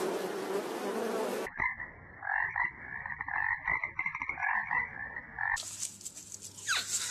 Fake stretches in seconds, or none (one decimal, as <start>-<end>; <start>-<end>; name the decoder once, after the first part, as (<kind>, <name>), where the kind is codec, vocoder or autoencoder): none